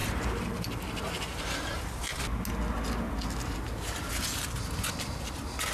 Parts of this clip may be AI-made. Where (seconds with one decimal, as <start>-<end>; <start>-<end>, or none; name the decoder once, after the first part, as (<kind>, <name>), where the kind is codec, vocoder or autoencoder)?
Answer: 0.0-2.2 (vocoder, BigVGAN v2)